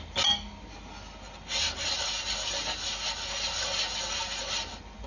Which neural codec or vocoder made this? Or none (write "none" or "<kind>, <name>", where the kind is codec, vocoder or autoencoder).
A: none